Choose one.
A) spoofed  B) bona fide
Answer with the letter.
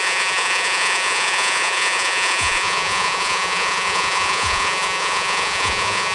A